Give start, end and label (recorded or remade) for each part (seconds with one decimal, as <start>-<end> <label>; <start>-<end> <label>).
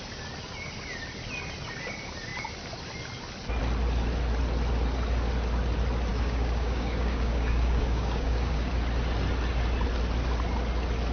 0.0-6.1 recorded; 6.1-8.7 remade; 8.7-11.1 recorded